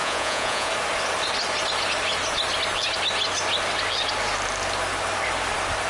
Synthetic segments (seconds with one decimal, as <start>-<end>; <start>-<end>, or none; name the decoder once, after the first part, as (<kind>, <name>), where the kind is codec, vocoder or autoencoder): 0.0-0.7 (vocoder, Vocos)